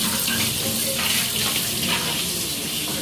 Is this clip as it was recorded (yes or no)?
yes